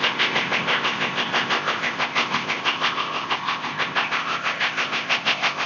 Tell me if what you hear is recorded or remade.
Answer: remade